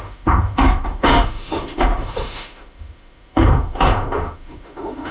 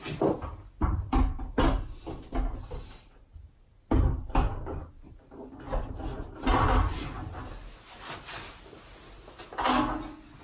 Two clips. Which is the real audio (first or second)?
second